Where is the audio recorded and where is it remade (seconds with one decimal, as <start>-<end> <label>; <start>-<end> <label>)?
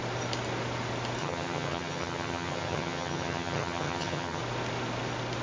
0.0-1.2 recorded; 1.2-4.4 remade; 4.4-5.4 recorded